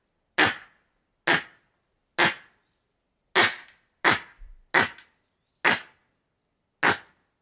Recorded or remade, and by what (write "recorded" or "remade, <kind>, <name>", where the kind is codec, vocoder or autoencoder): recorded